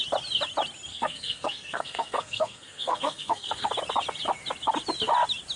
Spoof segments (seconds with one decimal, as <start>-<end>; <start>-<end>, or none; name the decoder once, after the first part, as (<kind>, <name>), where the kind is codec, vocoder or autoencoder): 0.9-3.7 (codec, SNAC)